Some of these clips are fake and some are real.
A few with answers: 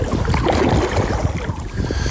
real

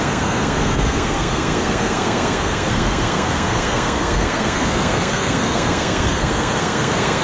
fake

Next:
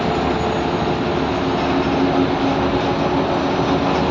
real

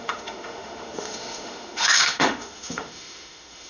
fake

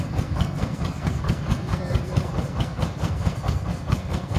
fake